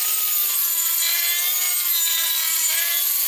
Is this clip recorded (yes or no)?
yes